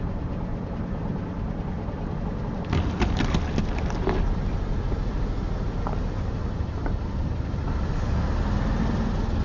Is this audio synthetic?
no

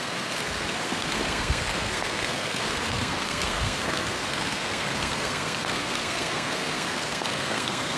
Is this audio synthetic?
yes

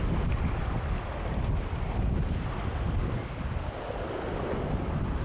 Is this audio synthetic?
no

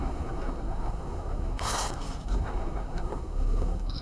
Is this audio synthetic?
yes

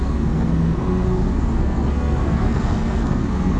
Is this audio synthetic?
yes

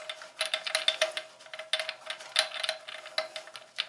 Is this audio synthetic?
no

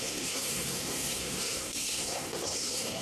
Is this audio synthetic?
yes